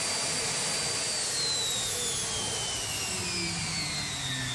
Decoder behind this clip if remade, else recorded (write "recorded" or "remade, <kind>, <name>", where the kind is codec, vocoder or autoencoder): recorded